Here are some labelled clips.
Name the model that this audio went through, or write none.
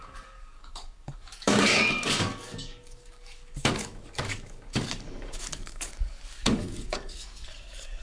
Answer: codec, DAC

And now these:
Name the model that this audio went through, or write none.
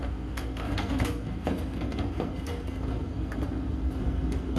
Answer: codec, SNAC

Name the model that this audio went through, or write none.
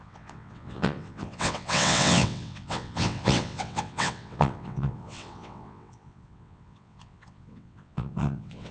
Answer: vocoder, WaveNeXt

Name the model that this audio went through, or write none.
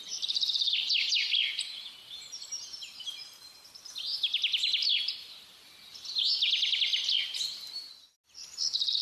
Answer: none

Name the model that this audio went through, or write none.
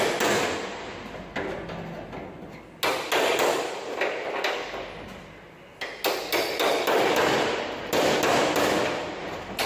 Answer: none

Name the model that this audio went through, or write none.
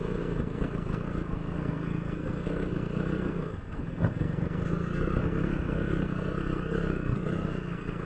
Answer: codec, SNAC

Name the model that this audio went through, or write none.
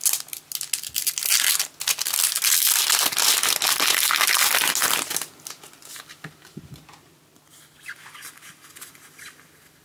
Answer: none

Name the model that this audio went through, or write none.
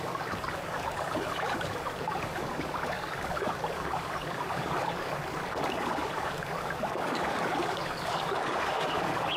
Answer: codec, DAC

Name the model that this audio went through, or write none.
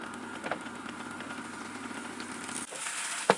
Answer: none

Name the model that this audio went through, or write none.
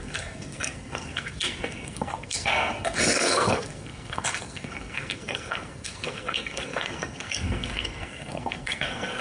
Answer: codec, SNAC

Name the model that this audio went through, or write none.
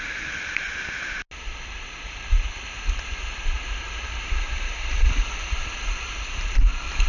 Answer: none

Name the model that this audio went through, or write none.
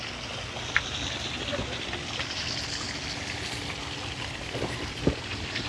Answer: none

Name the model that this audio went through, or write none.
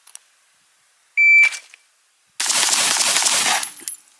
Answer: none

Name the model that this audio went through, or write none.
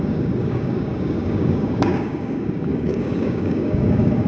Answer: codec, DAC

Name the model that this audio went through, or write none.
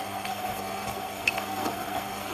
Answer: codec, SNAC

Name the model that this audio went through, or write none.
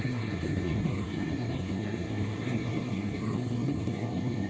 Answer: codec, SNAC